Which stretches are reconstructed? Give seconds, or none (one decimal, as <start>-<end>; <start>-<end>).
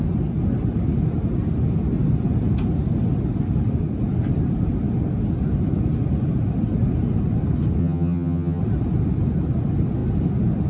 7.8-8.6